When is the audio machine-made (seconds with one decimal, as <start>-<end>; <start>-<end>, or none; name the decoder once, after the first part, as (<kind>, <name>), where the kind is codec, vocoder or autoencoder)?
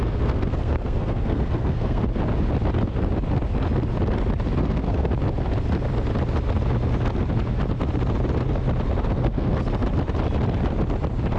0.0-2.0 (codec, SNAC); 4.6-5.1; 9.2-9.7